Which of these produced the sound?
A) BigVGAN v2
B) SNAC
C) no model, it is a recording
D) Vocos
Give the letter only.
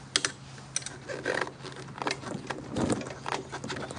C